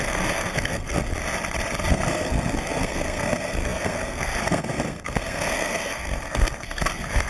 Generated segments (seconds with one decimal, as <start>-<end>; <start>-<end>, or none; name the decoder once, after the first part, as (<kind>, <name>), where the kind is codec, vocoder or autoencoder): 0.0-1.1 (codec, SNAC); 1.9-7.3

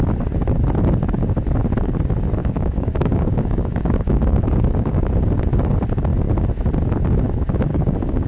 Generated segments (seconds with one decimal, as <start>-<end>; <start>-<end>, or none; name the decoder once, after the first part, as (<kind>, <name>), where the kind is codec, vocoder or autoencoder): 2.4-5.1 (codec, DAC); 7.7-8.3

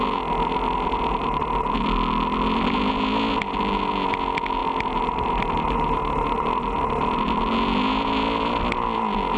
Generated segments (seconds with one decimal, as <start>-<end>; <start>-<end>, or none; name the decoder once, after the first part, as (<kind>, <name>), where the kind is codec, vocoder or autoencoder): none

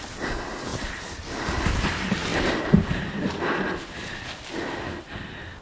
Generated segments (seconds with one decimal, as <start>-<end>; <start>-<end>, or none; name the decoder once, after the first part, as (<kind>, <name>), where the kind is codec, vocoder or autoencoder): none

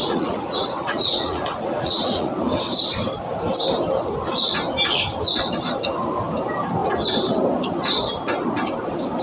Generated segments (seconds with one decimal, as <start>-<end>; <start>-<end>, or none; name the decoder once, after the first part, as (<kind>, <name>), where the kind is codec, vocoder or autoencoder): 0.0-2.3 (vocoder, Vocos)

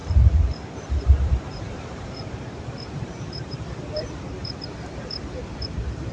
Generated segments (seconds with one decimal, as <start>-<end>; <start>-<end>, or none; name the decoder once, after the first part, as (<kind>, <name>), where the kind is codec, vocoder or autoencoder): 1.0-6.1 (vocoder, BigVGAN v2)

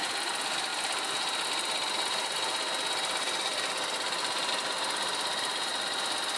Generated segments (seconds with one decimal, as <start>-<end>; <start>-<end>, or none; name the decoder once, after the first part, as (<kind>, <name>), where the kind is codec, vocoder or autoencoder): none